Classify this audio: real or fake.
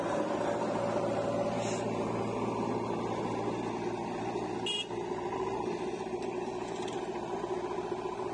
real